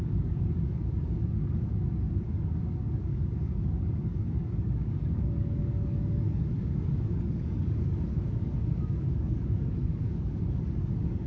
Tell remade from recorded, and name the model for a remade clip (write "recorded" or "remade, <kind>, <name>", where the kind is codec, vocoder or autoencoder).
remade, codec, DAC